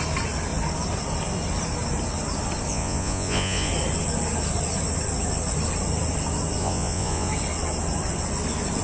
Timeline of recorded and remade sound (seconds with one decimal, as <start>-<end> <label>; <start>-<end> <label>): 0.0-2.7 recorded; 2.7-3.7 remade; 3.7-6.6 recorded; 6.6-7.3 remade; 7.3-8.8 recorded